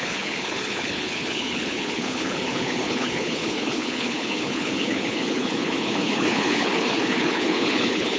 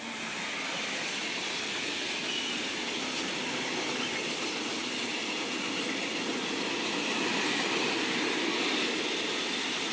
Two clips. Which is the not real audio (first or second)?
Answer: first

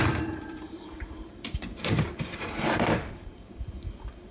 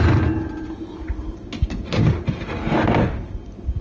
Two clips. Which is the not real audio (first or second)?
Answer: first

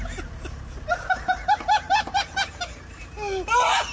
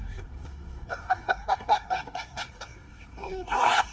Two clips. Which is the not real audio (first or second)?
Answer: second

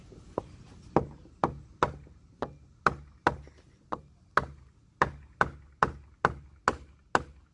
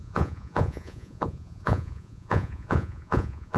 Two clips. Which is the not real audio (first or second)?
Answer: second